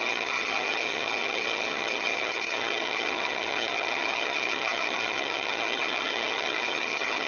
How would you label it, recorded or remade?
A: remade